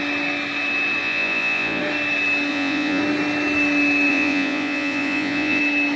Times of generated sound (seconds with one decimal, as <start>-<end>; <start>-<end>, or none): 1.0-1.8; 2.5-3.0; 4.1-5.6